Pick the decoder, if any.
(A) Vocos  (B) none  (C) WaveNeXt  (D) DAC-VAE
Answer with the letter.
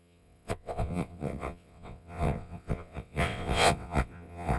C